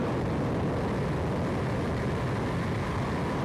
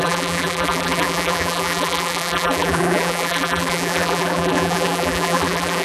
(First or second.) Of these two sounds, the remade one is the second